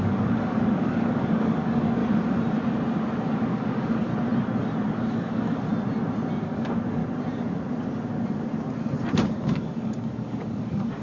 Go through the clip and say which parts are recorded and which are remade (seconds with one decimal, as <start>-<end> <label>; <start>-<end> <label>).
0.0-2.0 remade; 2.0-3.2 recorded; 3.2-4.1 remade; 4.1-4.9 recorded; 4.9-5.7 remade; 5.7-6.4 recorded; 6.4-7.0 remade; 7.0-9.3 recorded; 9.3-11.0 remade